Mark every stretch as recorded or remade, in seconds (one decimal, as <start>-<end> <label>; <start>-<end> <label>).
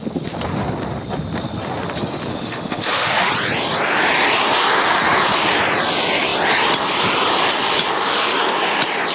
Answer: 0.0-2.3 recorded; 2.3-3.3 remade; 3.3-9.1 recorded